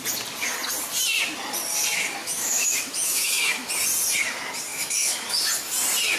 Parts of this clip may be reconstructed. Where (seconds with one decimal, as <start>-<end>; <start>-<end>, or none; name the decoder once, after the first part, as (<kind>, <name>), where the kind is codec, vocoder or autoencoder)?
2.2-3.7 (autoencoder, DAC-VAE); 4.7-5.4